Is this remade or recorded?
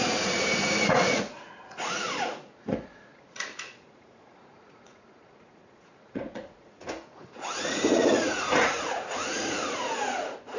remade